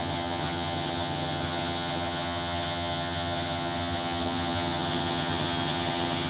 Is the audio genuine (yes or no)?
no